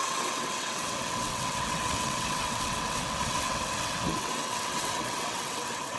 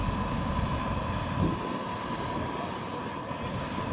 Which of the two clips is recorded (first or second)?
second